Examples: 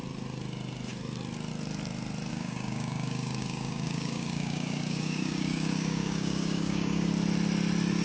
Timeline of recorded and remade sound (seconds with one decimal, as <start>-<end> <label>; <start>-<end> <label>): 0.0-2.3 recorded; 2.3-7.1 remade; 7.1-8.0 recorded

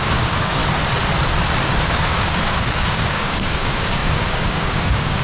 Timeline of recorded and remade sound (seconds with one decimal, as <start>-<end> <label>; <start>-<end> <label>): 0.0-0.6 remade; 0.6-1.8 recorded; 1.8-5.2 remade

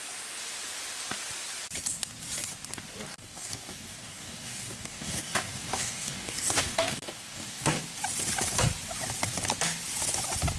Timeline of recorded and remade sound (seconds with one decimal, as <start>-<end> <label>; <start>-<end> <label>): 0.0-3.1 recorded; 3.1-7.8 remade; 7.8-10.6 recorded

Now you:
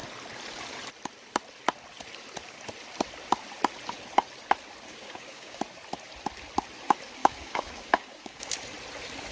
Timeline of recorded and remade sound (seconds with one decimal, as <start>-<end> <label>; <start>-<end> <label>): 0.0-4.9 recorded; 4.9-5.6 remade; 5.6-7.2 recorded; 7.2-8.5 remade; 8.5-9.3 recorded

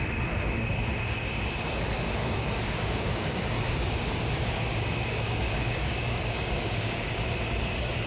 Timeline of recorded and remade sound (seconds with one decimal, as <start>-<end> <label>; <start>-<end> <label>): 0.0-2.2 recorded; 2.2-7.1 remade; 7.1-8.1 recorded

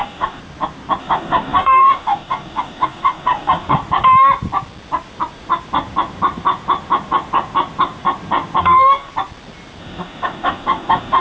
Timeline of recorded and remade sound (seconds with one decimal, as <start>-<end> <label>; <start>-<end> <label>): 0.0-0.4 remade; 0.4-1.0 recorded; 1.0-3.8 remade; 3.8-8.6 recorded; 8.6-9.1 remade; 9.1-9.8 recorded; 9.8-11.2 remade

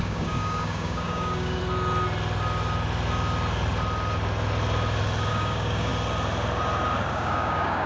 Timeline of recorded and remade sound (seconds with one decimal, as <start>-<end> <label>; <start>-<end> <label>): 0.0-1.6 remade; 1.6-5.3 recorded; 5.3-5.9 remade; 5.9-7.1 recorded; 7.1-7.9 remade

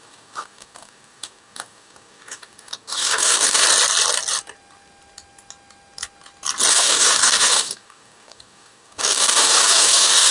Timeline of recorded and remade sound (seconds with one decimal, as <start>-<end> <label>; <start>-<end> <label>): 0.0-3.6 remade; 3.6-6.7 recorded; 6.7-10.3 remade